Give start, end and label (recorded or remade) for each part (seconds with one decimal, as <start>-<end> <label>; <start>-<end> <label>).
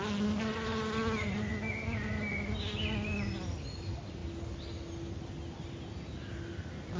0.0-7.0 recorded